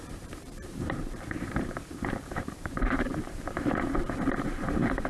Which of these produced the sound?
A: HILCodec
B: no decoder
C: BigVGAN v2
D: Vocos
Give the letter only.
C